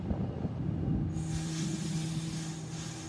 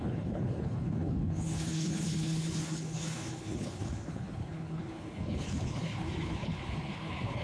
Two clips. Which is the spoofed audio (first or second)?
second